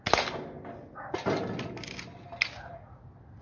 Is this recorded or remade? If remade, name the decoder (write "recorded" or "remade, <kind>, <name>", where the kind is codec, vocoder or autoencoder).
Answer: recorded